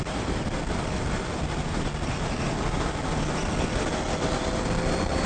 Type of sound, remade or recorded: recorded